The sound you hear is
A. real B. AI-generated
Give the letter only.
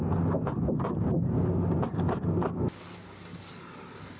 A